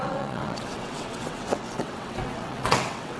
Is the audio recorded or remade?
remade